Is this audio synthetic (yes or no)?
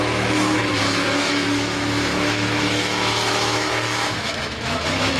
yes